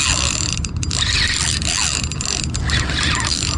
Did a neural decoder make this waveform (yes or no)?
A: no